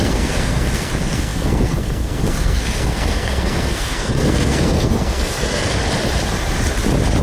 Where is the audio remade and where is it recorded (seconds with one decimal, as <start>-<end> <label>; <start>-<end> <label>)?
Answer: 0.0-5.8 remade; 5.8-7.2 recorded